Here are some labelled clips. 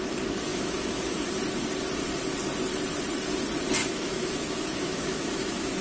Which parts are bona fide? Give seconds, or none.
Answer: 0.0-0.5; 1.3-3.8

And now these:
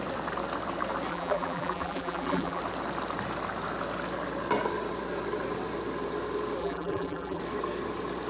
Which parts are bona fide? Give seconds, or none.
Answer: 0.0-1.1; 2.6-6.6; 7.4-8.3

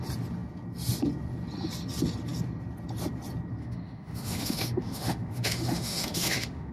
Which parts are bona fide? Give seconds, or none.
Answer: 0.0-3.6

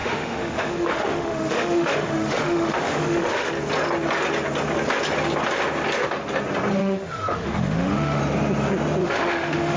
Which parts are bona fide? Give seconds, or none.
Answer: 3.5-6.8; 8.2-9.0

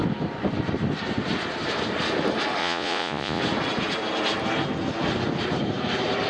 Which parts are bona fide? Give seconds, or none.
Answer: 0.0-2.6; 3.4-6.3

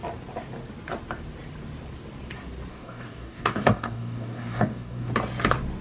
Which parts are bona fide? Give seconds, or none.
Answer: 0.0-2.7; 5.1-5.8

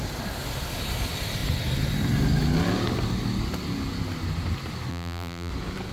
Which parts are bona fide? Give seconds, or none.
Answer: 0.0-4.9; 5.5-5.9